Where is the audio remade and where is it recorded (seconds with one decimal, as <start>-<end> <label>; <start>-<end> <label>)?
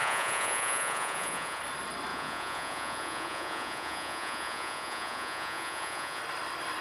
0.0-1.6 remade; 1.6-2.1 recorded; 2.1-6.2 remade; 6.2-6.8 recorded